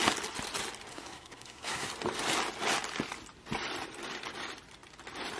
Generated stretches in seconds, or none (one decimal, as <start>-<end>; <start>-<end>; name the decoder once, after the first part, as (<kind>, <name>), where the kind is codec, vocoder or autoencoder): 0.9-1.9 (codec, SNAC)